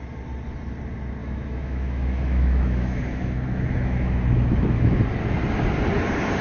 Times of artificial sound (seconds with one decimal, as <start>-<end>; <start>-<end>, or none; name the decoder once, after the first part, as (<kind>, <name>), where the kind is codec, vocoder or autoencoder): 1.2-5.0 (autoencoder, DAC-VAE)